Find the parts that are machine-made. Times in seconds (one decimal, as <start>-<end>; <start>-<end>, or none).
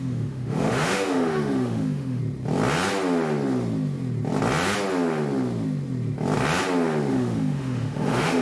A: 0.0-2.2; 7.1-8.4